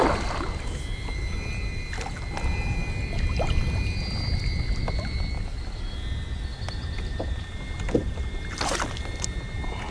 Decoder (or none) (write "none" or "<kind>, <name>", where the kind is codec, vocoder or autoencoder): none